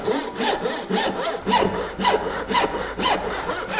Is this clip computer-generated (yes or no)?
no